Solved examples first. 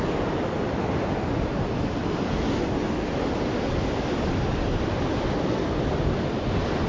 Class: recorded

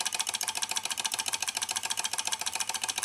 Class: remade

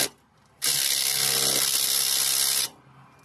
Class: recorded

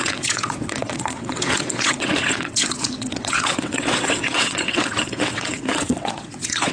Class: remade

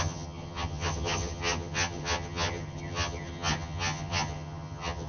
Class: remade